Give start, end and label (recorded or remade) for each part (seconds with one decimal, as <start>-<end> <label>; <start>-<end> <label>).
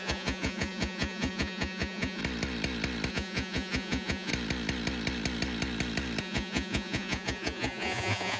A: 0.0-2.2 remade; 2.2-3.1 recorded; 3.1-4.3 remade; 4.3-6.2 recorded; 6.2-8.4 remade